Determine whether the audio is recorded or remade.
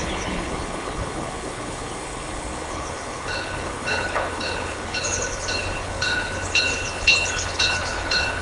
remade